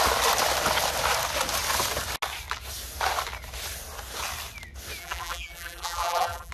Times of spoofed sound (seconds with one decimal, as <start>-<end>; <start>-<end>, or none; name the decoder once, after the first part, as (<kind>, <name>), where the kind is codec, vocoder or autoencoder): 5.0-6.5 (vocoder, BigVGAN v2)